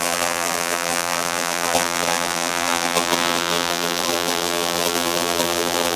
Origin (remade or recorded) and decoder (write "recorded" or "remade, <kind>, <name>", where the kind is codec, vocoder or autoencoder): remade, vocoder, BigVGAN v2